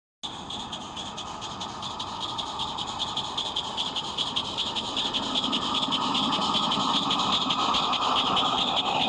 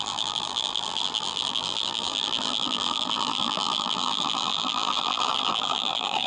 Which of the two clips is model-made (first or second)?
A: second